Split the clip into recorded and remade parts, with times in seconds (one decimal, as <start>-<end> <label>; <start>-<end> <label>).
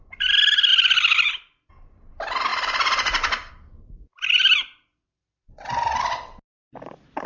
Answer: 0.0-7.3 recorded